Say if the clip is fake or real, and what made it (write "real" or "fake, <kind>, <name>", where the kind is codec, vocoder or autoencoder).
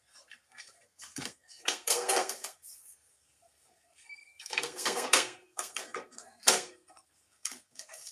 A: fake, codec, SNAC